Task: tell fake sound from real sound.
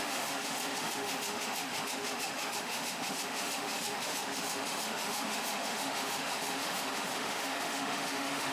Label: fake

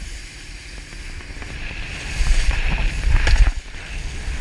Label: real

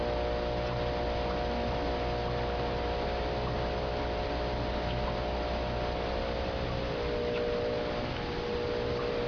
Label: real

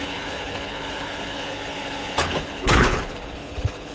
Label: fake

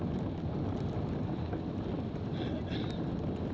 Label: real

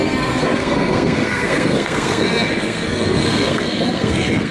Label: fake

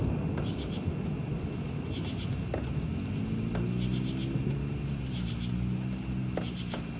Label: real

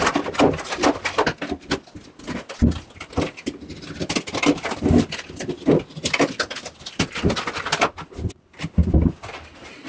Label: real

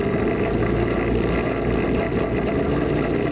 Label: real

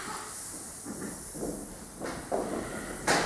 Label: real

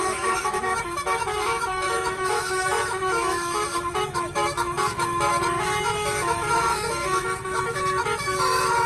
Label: fake